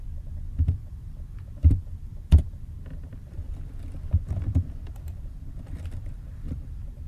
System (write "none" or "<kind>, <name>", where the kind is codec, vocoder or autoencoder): vocoder, BigVGAN v2